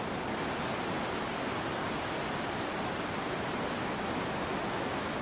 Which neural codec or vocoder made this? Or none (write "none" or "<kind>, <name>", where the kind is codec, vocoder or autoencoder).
none